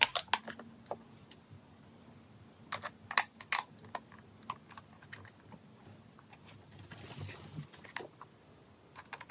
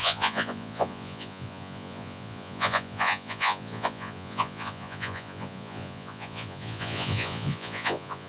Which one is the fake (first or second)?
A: second